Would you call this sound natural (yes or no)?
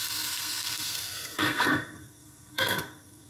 no